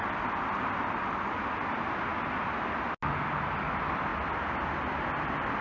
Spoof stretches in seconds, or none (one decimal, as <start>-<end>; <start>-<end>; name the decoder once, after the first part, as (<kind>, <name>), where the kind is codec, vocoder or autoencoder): none